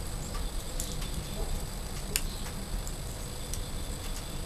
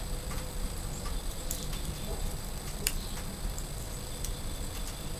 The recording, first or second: first